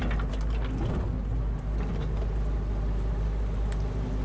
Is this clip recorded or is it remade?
recorded